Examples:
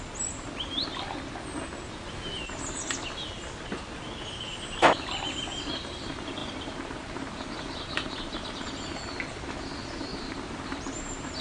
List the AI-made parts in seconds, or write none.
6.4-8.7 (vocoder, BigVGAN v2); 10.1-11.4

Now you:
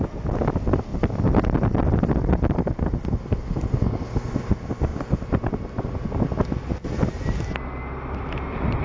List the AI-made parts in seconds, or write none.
none

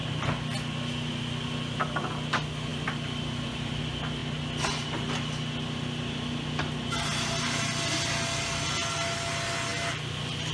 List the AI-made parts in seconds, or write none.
2.7-3.8 (vocoder, BigVGAN v2); 9.7-10.5

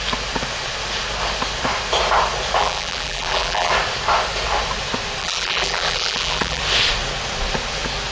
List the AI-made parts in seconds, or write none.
2.6-3.7 (vocoder, BigVGAN v2); 5.2-6.6

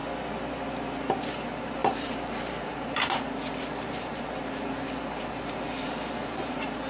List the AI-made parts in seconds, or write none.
1.3-6.9 (vocoder, BigVGAN v2)

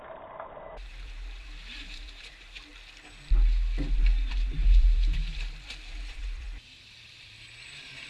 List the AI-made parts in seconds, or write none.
0.0-2.7 (vocoder, BigVGAN v2); 4.3-8.1